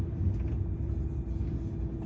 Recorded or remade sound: recorded